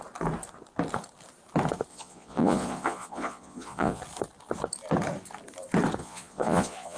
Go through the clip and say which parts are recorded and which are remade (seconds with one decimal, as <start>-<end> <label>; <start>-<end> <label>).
0.0-1.9 recorded; 1.9-4.0 remade; 4.0-6.0 recorded; 6.0-7.0 remade